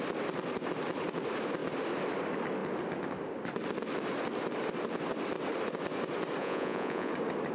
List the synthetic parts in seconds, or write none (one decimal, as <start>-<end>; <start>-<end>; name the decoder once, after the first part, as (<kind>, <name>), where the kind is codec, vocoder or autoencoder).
6.4-7.1 (vocoder, Vocos)